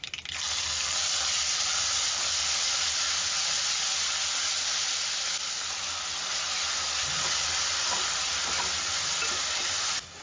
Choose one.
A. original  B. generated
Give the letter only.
A